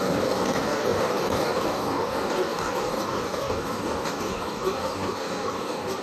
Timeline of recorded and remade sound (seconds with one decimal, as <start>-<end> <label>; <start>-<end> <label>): 0.0-6.0 remade